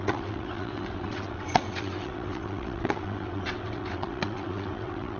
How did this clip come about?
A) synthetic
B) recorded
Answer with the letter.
A